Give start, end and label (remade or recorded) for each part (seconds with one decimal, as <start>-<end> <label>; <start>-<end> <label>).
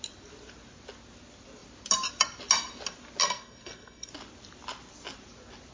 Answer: 0.0-3.2 recorded; 3.2-4.1 remade; 4.1-5.7 recorded